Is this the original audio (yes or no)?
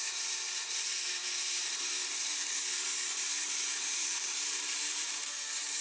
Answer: no